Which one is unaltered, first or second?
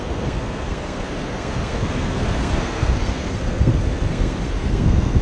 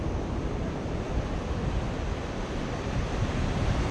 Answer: second